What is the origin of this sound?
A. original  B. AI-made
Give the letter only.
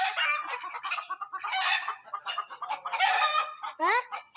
A